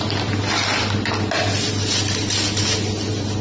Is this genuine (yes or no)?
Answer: yes